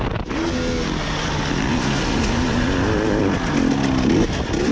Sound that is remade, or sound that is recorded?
recorded